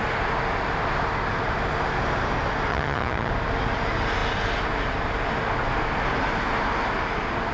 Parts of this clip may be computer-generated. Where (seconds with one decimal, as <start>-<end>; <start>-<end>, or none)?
2.7-3.3